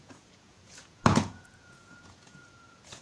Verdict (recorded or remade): remade